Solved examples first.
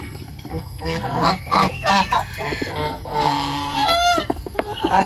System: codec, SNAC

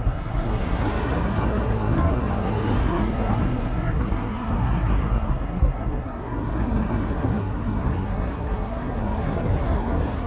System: codec, SNAC